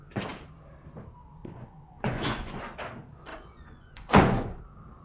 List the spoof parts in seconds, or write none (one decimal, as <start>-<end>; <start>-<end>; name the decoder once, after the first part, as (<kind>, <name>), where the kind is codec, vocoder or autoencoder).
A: 1.4-2.6 (vocoder, Vocos); 3.3-4.6